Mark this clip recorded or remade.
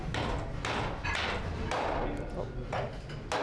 recorded